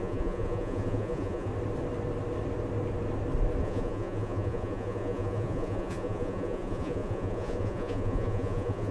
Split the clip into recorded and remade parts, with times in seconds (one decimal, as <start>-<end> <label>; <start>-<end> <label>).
0.0-1.5 remade; 1.5-3.6 recorded; 3.6-8.9 remade